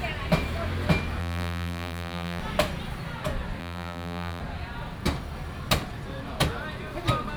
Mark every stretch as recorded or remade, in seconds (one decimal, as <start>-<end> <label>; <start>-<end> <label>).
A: 0.0-1.2 recorded; 1.2-2.4 remade; 2.4-3.6 recorded; 3.6-4.4 remade; 4.4-7.4 recorded